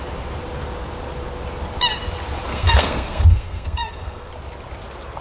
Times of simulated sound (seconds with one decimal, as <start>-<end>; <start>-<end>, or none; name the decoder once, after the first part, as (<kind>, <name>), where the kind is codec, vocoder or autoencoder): 2.5-4.3 (codec, SNAC)